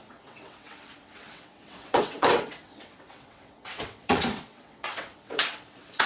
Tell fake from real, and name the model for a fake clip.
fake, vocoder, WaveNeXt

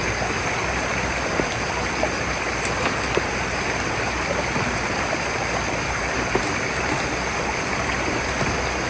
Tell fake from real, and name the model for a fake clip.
real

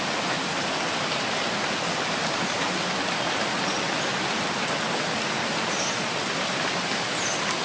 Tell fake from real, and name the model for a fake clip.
real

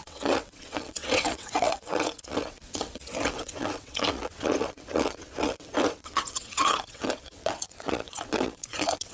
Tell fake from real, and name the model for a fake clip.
fake, vocoder, WaveNeXt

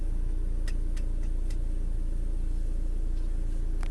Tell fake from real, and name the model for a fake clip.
real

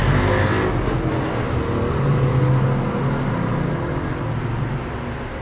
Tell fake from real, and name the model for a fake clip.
real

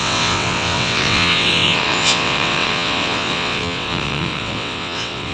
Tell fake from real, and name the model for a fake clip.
fake, vocoder, WaveNeXt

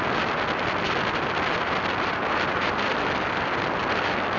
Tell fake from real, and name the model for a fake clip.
real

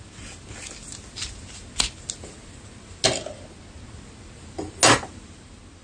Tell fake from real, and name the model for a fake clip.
real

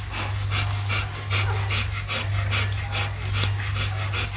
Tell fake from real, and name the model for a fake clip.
real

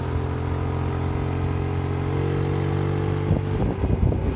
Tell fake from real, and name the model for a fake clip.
real